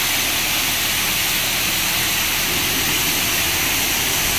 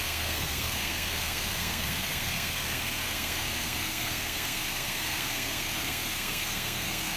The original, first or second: first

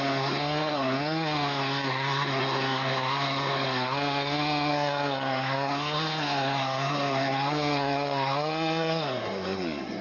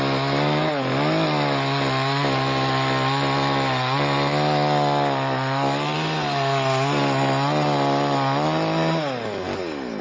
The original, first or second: second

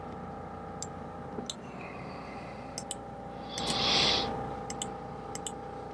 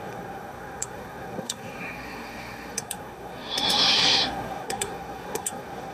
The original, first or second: first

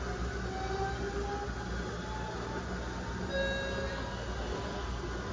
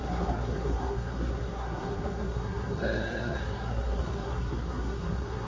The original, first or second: first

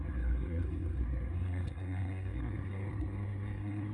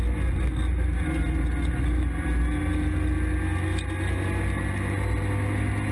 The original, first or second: second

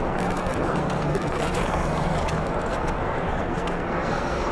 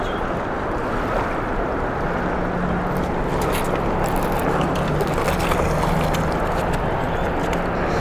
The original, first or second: second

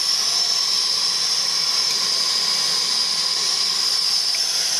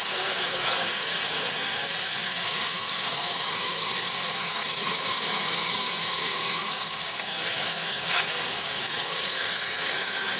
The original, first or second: first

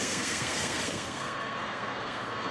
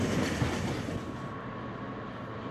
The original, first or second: second